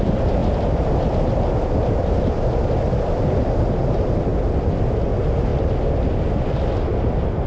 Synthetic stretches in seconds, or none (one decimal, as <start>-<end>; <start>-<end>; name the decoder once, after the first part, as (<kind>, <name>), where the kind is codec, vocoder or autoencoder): none